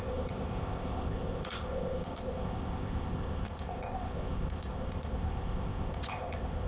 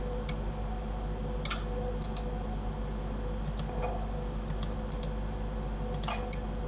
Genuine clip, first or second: second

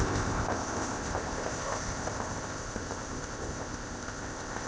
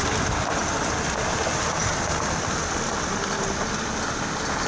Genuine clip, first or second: second